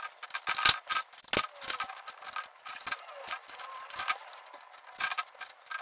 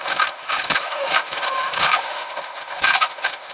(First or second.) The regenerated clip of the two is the second